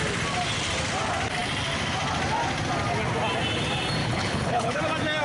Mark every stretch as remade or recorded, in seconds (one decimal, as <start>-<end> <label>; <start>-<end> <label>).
0.0-4.0 recorded; 4.0-4.8 remade; 4.8-5.2 recorded